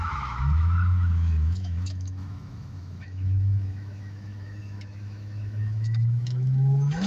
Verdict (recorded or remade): remade